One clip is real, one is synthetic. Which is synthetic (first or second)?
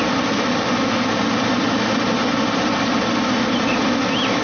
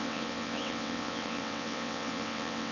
second